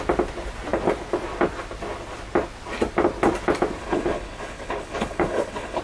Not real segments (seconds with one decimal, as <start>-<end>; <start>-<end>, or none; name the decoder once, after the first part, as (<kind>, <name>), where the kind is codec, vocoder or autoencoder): 3.8-5.8 (codec, HILCodec)